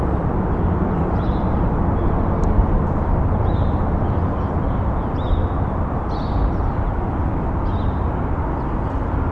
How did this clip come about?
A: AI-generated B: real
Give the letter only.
B